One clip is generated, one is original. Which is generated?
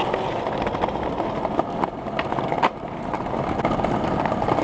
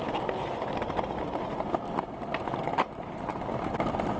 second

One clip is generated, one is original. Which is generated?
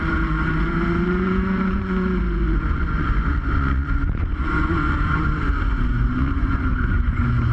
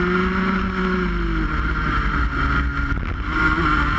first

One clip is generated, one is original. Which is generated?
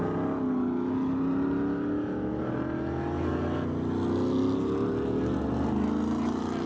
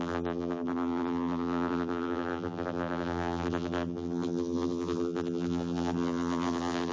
second